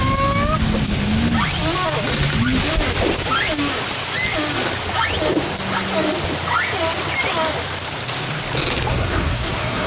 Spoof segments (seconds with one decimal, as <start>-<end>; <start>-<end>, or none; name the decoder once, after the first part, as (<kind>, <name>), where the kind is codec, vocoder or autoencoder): 8.9-9.9 (codec, SNAC)